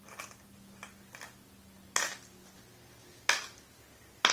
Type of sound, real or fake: real